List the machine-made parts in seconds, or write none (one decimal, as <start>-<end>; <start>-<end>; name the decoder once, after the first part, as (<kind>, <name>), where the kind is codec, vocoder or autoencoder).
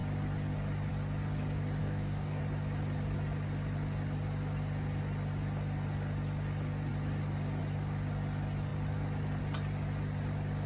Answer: 1.8-2.4 (codec, DAC)